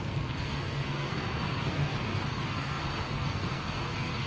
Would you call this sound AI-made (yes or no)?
yes